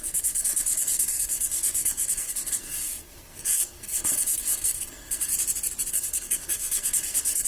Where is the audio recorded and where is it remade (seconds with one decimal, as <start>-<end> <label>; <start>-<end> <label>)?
0.0-5.3 remade; 5.3-5.9 recorded; 5.9-7.5 remade